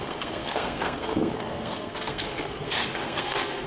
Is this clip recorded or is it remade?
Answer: remade